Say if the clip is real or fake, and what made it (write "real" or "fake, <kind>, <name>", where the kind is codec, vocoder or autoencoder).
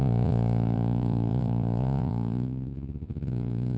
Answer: fake, vocoder, Vocos